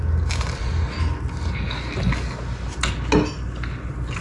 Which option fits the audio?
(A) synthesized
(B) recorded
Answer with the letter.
B